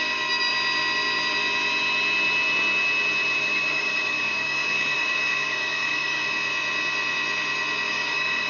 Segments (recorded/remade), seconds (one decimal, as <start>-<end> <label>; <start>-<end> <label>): 0.0-0.5 remade; 0.5-3.4 recorded; 3.4-6.2 remade; 6.2-7.9 recorded; 7.9-8.5 remade